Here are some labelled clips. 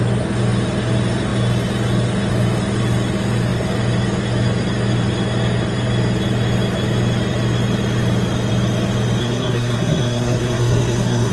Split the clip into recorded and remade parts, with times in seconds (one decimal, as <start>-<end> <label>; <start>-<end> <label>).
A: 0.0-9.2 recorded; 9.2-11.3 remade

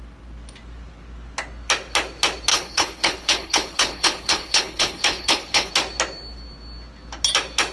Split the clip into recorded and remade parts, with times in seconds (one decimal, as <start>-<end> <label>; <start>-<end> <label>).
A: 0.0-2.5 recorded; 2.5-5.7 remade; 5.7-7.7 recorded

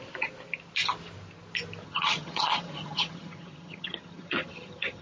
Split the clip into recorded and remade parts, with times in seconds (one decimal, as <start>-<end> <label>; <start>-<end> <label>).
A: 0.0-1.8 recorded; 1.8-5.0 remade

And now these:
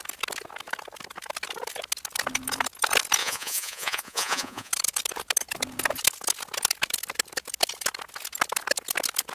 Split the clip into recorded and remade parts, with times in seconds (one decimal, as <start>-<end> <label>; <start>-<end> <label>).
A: 0.0-3.2 recorded; 3.2-4.7 remade; 4.7-9.3 recorded

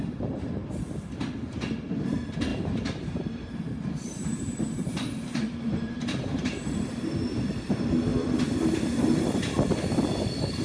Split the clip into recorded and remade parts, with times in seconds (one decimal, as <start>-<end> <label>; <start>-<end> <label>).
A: 0.0-2.5 recorded; 2.5-7.4 remade; 7.4-10.6 recorded

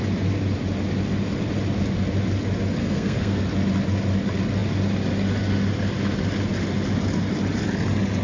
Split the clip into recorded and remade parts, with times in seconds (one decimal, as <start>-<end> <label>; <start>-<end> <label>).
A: 0.0-2.8 recorded; 2.8-3.4 remade; 3.4-8.2 recorded

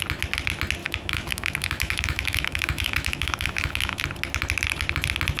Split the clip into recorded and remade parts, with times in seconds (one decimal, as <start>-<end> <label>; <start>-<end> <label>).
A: 0.0-0.8 recorded; 0.8-4.0 remade; 4.0-5.4 recorded